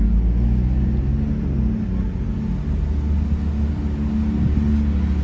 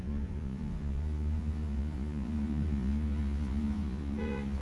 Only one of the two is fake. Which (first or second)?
second